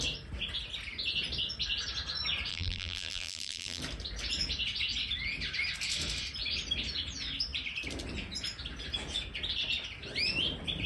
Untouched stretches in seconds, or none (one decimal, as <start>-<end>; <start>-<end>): 0.0-2.5; 3.8-10.9